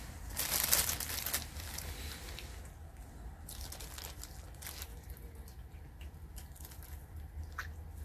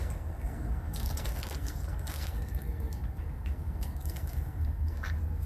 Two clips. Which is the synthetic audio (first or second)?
second